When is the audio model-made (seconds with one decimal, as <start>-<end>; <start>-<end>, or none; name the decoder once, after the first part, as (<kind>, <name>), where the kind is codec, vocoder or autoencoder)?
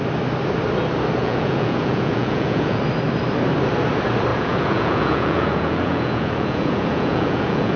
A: 1.2-2.8 (vocoder, Vocos); 4.3-7.8